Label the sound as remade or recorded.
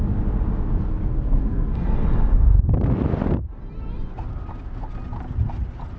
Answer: recorded